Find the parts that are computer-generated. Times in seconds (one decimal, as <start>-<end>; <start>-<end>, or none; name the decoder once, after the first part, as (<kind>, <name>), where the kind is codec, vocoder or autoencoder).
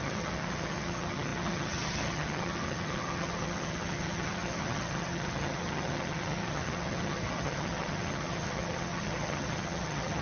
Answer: 0.0-10.2 (vocoder, HiFi-GAN)